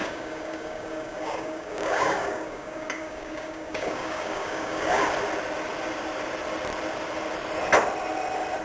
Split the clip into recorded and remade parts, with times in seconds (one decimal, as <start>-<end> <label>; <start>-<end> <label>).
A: 0.0-5.0 remade; 5.0-8.6 recorded